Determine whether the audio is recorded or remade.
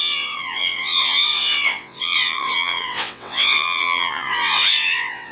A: remade